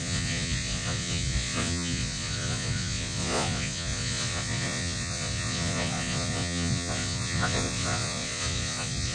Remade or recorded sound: remade